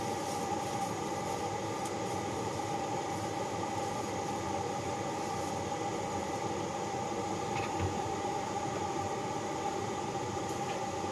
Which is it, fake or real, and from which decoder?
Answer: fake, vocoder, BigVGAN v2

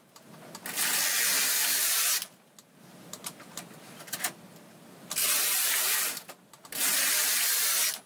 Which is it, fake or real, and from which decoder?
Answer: real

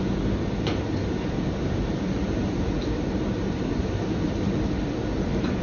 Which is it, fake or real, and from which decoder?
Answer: fake, vocoder, BigVGAN v2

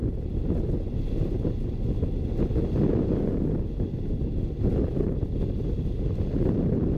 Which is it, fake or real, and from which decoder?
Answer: real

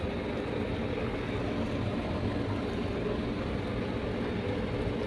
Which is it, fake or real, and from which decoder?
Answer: real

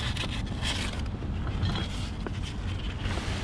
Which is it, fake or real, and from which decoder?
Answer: real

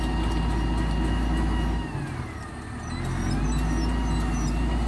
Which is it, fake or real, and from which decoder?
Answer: real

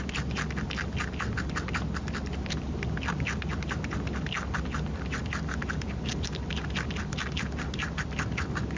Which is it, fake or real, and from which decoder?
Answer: real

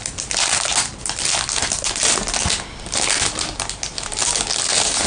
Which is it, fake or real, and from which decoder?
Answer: real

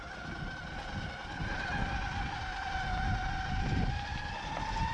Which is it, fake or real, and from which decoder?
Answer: real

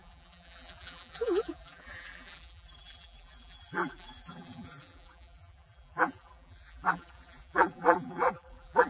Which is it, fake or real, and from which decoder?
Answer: fake, vocoder, BigVGAN v2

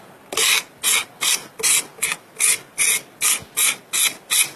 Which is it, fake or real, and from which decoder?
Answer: real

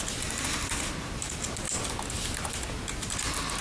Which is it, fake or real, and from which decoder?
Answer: real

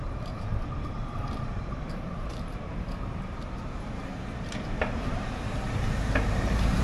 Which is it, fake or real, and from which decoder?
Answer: fake, vocoder, BigVGAN v2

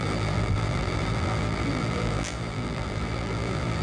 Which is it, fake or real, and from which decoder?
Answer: fake, vocoder, BigVGAN v2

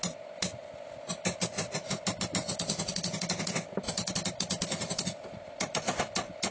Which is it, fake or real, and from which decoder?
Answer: real